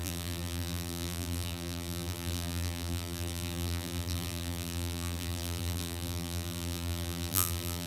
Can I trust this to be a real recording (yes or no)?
no